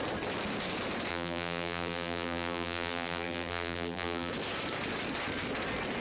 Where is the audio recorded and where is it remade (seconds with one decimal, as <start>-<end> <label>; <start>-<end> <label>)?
0.0-1.1 recorded; 1.1-4.3 remade; 4.3-6.0 recorded